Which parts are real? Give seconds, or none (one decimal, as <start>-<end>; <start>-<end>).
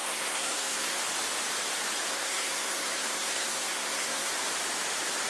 1.0-2.1; 4.3-5.3